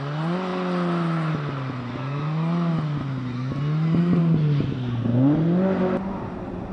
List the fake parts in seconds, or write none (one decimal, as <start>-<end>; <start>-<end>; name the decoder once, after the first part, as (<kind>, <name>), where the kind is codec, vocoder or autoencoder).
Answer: none